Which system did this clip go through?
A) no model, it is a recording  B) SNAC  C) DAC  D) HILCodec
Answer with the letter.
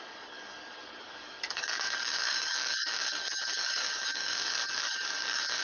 C